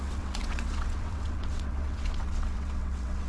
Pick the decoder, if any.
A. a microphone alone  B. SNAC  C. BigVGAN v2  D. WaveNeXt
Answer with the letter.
D